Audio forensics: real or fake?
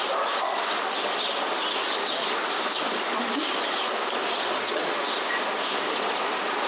real